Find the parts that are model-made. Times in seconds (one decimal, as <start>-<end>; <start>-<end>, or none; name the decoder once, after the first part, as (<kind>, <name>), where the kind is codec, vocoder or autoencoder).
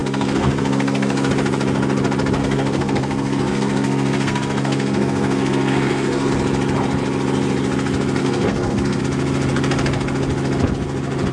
0.0-1.3 (codec, SNAC); 2.4-6.3; 8.2-9.0